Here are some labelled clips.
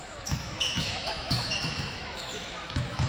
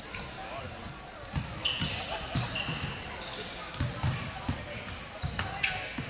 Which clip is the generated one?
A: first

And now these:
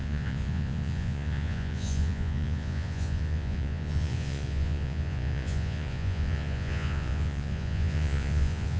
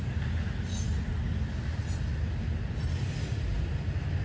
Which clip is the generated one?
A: first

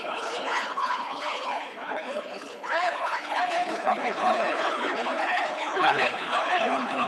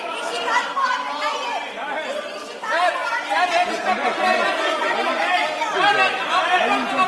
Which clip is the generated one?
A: first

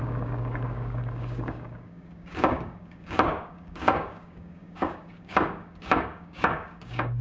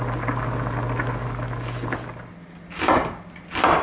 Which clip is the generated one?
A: first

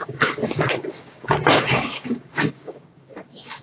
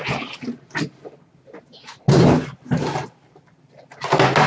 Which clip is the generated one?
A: first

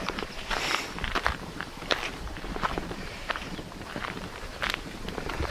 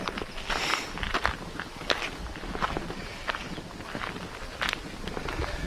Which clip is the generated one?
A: first